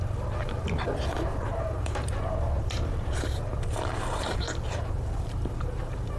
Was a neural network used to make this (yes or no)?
yes